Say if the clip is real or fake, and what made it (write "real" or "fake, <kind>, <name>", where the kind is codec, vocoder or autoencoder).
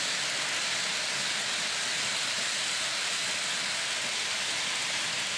real